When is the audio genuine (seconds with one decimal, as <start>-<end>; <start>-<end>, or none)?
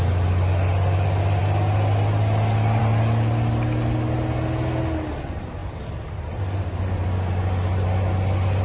0.0-8.6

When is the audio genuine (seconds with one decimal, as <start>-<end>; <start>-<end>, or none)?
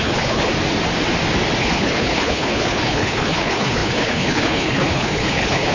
0.5-1.6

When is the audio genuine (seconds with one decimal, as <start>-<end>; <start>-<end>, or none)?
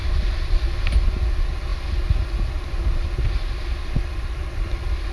0.9-5.1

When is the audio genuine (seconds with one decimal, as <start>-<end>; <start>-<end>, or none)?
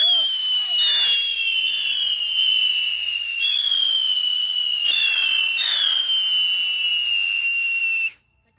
0.0-1.3; 6.0-8.6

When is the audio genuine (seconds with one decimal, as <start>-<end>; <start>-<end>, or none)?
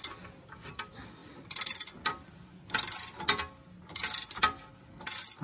0.0-5.4